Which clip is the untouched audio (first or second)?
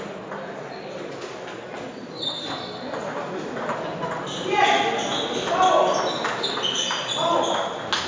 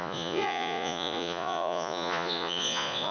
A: first